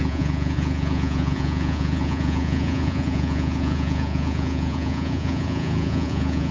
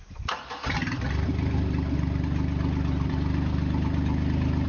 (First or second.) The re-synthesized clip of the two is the first